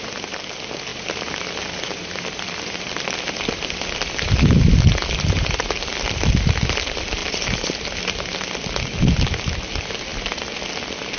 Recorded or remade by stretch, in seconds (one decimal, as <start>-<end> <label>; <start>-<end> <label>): 0.0-0.9 recorded; 0.9-5.9 remade; 5.9-7.2 recorded; 7.2-8.0 remade; 8.0-11.2 recorded